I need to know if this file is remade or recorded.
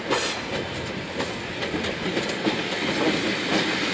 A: recorded